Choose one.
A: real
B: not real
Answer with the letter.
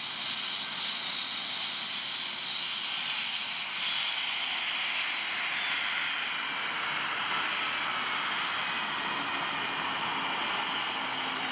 A